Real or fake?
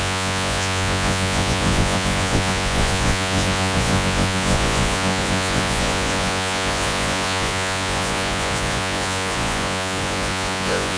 fake